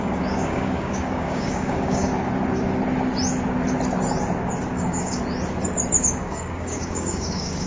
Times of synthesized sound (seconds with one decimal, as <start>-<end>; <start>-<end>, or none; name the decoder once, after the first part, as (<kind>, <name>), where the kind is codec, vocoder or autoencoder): 0.0-2.1 (codec, DAC); 4.7-5.2; 6.0-7.7